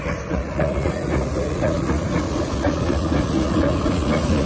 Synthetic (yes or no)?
yes